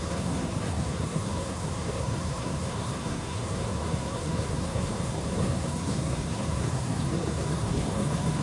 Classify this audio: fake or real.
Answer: fake